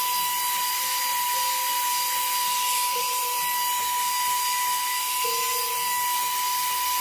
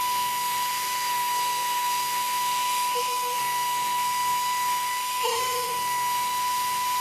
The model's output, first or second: second